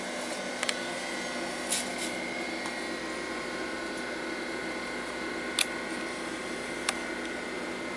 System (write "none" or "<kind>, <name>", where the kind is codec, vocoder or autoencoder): none